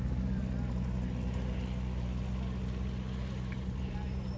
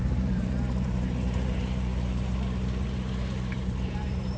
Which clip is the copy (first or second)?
second